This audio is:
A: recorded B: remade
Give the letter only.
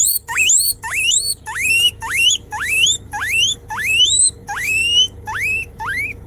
B